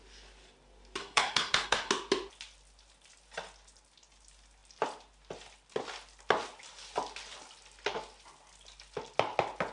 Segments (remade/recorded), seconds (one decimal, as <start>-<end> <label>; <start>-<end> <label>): 0.0-1.0 recorded; 1.0-1.9 remade; 1.9-9.7 recorded